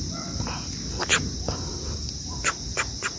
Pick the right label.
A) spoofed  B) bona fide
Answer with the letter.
B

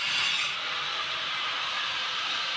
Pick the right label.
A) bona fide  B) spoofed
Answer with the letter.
B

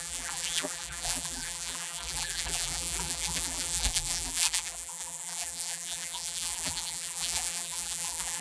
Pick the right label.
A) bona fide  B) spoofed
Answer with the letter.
B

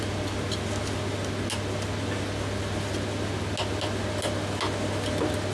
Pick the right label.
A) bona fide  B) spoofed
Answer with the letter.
A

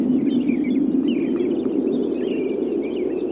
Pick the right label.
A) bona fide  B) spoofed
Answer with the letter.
B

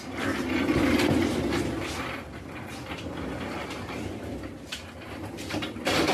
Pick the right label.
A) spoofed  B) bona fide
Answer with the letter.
B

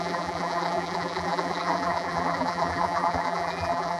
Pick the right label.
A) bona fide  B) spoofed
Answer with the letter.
B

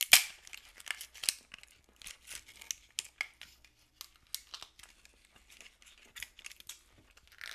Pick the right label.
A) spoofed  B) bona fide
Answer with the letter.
B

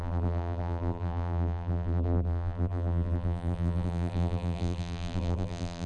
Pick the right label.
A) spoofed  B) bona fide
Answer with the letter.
A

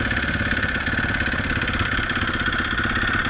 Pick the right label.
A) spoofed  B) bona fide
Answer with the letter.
B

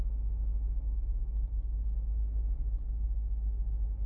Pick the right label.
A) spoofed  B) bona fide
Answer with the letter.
B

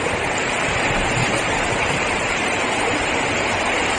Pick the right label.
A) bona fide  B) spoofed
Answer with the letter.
B